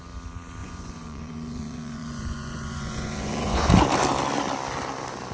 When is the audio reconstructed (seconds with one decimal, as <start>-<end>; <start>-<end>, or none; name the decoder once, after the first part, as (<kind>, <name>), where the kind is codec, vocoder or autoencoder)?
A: 0.6-3.7 (vocoder, Vocos)